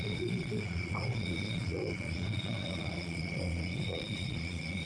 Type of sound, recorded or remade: remade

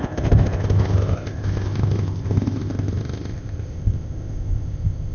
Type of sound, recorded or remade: remade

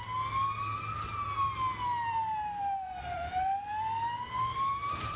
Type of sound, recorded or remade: remade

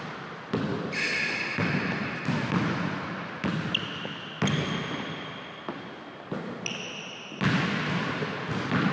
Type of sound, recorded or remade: recorded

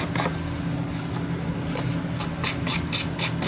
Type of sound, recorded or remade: recorded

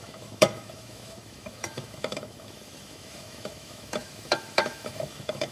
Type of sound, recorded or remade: remade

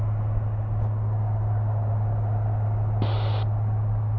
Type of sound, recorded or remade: recorded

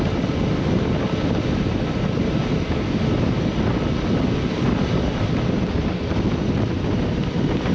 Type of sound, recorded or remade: recorded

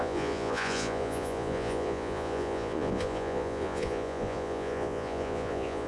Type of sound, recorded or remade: remade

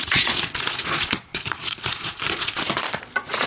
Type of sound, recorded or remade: remade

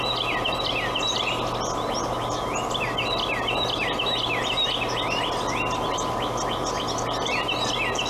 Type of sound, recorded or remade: recorded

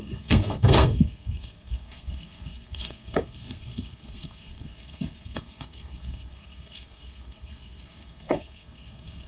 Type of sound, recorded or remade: remade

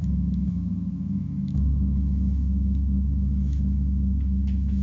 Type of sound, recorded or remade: remade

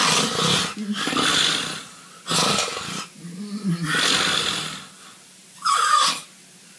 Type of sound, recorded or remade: recorded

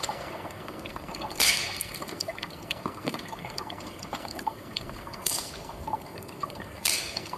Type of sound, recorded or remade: remade